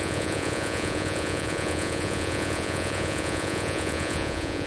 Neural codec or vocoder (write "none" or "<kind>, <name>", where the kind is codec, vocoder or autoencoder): vocoder, Vocos